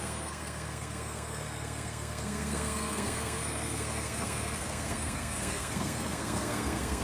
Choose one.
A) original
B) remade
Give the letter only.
B